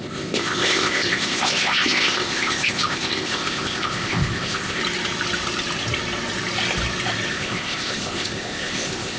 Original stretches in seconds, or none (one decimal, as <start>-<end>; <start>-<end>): 4.8-7.3